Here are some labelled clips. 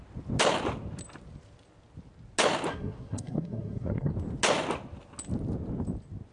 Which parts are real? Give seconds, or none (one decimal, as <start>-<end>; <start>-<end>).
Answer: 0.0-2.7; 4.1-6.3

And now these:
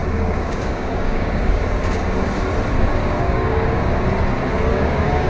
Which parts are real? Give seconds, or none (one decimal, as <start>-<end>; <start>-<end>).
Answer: 1.6-3.0; 4.0-4.7

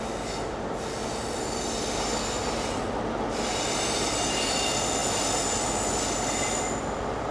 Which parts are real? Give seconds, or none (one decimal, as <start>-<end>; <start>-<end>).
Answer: 0.0-7.3

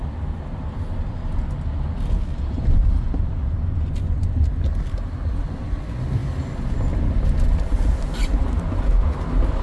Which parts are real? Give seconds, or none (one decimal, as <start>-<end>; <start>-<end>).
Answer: 0.0-9.6

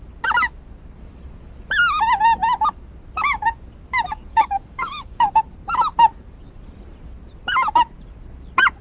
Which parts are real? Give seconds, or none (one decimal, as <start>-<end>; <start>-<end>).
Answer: 0.0-4.3; 5.3-8.8